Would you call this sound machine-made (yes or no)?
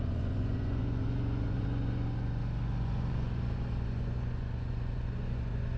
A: yes